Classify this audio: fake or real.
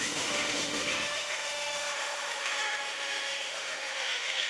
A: fake